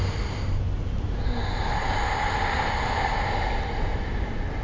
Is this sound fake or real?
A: real